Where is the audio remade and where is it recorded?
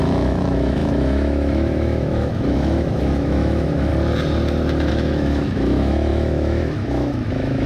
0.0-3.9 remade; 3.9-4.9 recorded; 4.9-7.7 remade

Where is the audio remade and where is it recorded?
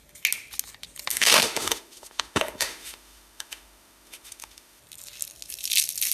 0.0-1.1 recorded; 1.1-4.8 remade; 4.8-6.1 recorded